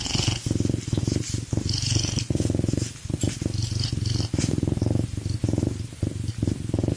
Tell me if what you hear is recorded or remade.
recorded